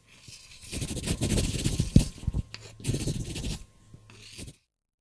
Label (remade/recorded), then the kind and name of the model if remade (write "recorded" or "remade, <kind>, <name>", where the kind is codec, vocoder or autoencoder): recorded